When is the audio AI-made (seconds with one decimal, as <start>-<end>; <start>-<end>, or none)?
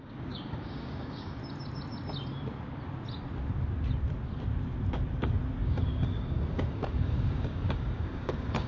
0.0-1.4; 5.6-8.7